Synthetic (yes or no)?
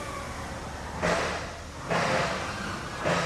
no